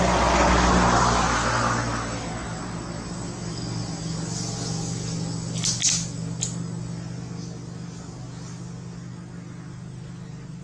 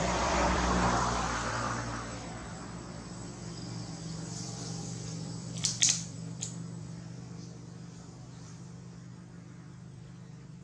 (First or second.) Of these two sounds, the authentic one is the first